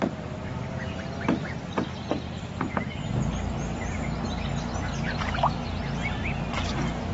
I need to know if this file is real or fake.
real